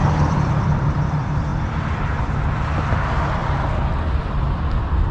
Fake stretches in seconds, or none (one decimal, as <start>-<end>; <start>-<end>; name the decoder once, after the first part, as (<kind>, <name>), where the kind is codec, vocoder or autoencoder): 0.5-3.4 (vocoder, BigVGAN v2); 4.2-5.1